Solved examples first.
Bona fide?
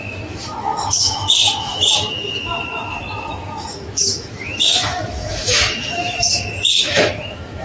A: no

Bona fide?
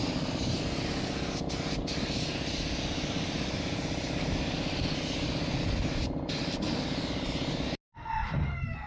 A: yes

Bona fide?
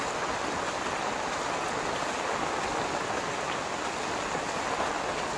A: yes